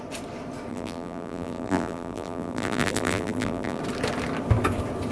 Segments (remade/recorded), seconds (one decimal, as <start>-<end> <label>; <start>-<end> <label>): 0.0-0.7 recorded; 0.7-3.8 remade; 3.8-5.1 recorded